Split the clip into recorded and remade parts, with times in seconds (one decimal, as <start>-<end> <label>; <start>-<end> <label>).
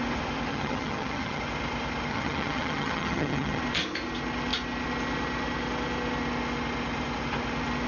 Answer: 0.0-0.5 recorded; 0.5-1.4 remade; 1.4-2.1 recorded; 2.1-3.6 remade; 3.6-7.9 recorded